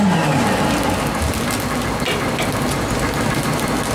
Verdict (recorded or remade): recorded